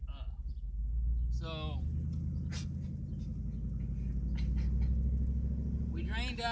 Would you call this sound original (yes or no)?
yes